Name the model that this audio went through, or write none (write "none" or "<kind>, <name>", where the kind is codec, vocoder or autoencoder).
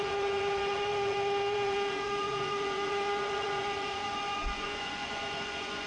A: vocoder, Vocos